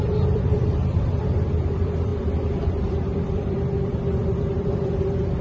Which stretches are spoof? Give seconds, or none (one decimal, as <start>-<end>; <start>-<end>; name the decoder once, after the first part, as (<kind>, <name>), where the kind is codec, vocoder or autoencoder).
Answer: 0.0-2.1 (vocoder, BigVGAN v2); 2.7-5.4